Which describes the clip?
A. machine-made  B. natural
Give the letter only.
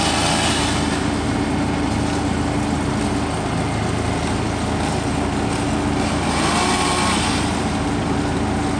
B